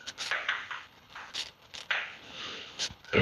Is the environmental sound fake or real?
fake